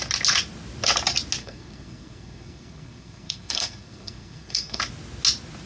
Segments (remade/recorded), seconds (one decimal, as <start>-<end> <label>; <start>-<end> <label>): 0.0-1.4 recorded; 1.4-4.8 remade; 4.8-5.7 recorded